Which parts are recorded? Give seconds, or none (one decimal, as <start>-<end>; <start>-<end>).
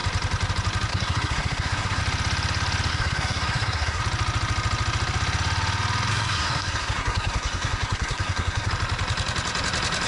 0.0-0.9; 2.0-2.9; 4.0-6.1; 8.7-10.1